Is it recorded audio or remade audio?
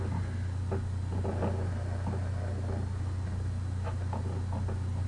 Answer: recorded